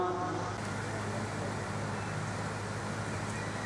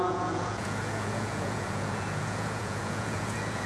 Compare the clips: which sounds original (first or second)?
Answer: first